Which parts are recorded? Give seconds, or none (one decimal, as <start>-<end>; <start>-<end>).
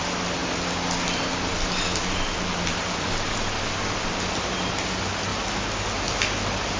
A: 0.0-6.8